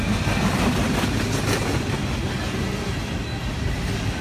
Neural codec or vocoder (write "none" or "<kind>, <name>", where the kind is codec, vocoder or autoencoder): none